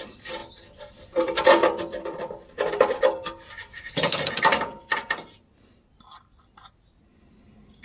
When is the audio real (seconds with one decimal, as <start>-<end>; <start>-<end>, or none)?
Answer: 0.0-0.4; 4.8-7.8